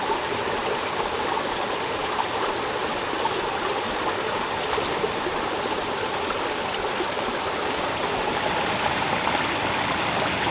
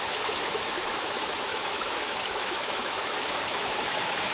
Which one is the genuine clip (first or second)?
first